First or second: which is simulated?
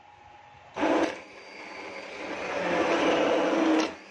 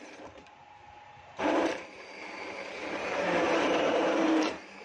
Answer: second